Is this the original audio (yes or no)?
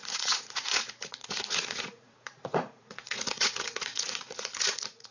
no